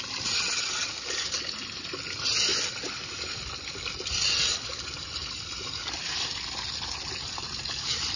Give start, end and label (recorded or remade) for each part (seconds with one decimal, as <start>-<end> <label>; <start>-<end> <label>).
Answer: 0.0-2.5 recorded; 2.5-3.8 remade; 3.8-4.7 recorded; 4.7-5.6 remade; 5.6-8.2 recorded